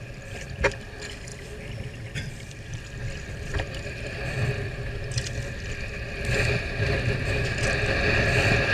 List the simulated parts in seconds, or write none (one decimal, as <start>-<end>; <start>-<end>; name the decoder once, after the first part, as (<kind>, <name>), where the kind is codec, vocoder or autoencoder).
1.3-4.2 (vocoder, BigVGAN v2)